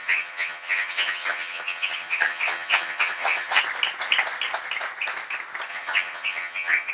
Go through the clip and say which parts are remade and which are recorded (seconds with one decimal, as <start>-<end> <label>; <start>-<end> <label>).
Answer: 0.0-3.6 remade; 3.6-5.7 recorded; 5.7-6.9 remade